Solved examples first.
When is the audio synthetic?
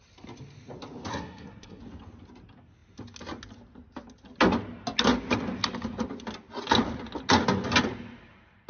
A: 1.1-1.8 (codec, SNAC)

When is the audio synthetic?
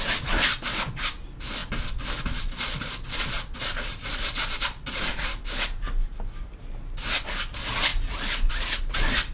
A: none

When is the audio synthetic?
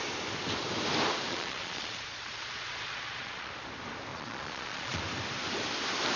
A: 1.3-3.5 (vocoder, Vocos); 4.1-5.0